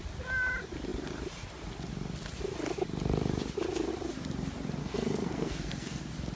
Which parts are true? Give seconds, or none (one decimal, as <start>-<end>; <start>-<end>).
0.0-4.8; 6.0-6.4